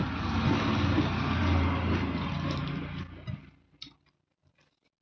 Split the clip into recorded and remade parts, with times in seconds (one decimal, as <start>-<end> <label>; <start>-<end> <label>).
0.0-1.4 recorded; 1.4-4.4 remade; 4.4-5.0 recorded